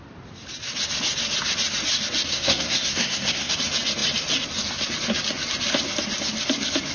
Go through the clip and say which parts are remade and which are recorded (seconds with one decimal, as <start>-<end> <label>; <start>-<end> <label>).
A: 0.0-2.3 recorded; 2.3-3.5 remade; 3.5-6.9 recorded

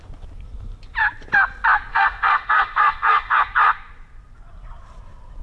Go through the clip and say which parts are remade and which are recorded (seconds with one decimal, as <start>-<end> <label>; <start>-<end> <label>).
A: 0.0-1.9 recorded; 1.9-3.4 remade; 3.4-5.4 recorded

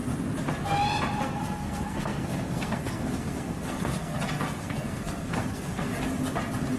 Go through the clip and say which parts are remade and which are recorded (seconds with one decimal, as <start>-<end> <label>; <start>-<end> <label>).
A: 0.0-1.2 recorded; 1.2-5.9 remade; 5.9-6.8 recorded

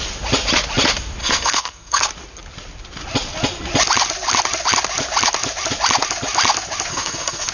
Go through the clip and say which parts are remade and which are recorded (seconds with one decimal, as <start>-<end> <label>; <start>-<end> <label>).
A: 0.0-1.2 recorded; 1.2-2.1 remade; 2.1-6.9 recorded; 6.9-7.5 remade

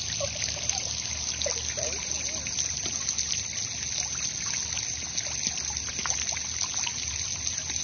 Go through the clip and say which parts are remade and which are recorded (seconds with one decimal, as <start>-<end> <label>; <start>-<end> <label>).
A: 0.0-7.8 recorded

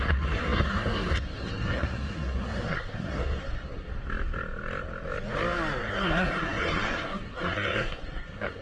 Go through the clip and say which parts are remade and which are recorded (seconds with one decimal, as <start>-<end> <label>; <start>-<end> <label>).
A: 0.0-3.9 remade; 3.9-5.8 recorded; 5.8-8.6 remade

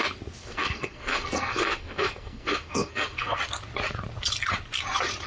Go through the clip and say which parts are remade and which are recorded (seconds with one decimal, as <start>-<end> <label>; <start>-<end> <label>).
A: 0.0-0.4 recorded; 0.4-3.4 remade; 3.4-5.3 recorded